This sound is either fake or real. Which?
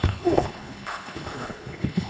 fake